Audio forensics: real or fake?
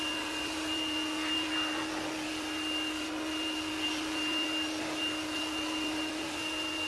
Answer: real